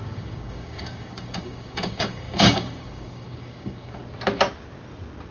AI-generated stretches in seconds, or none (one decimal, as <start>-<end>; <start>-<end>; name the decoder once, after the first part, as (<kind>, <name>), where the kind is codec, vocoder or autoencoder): 0.0-4.0 (codec, DAC)